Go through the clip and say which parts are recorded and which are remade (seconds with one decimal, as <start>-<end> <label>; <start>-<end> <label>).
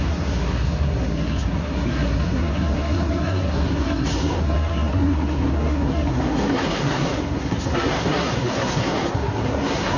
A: 0.0-10.0 remade